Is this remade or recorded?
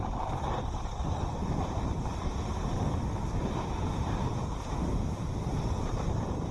remade